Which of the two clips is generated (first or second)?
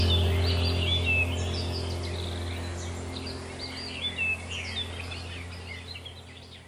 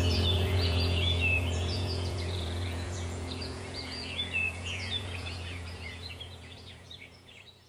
second